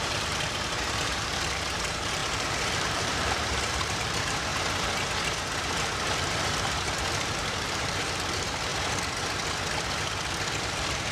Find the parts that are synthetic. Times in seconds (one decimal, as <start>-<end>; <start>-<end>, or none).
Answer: 0.0-4.5; 5.6-8.7; 10.6-11.1